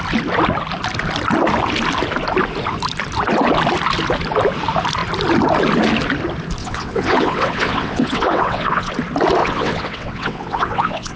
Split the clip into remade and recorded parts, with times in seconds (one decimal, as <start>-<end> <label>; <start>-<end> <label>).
0.0-6.6 recorded; 6.6-8.9 remade; 8.9-9.4 recorded; 9.4-11.2 remade